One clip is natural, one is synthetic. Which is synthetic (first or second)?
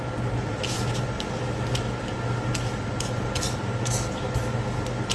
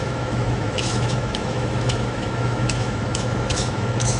second